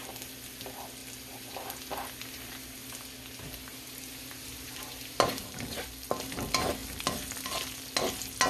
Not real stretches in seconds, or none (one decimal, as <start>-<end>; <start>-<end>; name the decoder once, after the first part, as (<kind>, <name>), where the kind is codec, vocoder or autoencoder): none